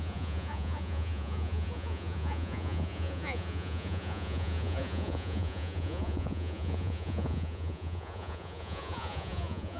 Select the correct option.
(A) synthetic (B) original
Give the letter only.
A